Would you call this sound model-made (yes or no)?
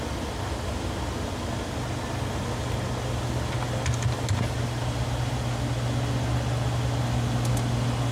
no